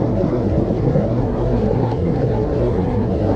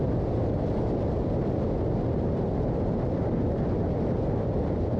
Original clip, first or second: second